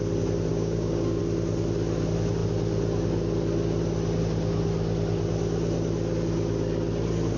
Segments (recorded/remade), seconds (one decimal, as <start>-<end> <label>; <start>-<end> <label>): 0.0-0.5 recorded; 0.5-1.2 remade; 1.2-7.4 recorded